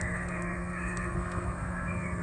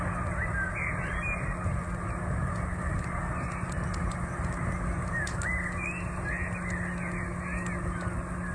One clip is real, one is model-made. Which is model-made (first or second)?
first